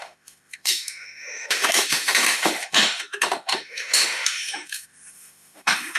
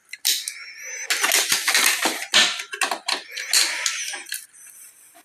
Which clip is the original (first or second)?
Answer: second